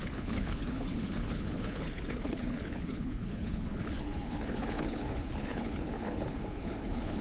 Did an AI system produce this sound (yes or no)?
yes